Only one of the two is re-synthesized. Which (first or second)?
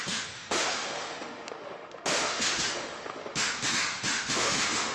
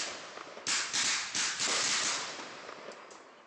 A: first